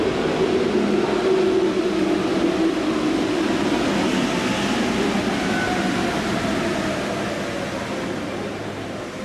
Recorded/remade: recorded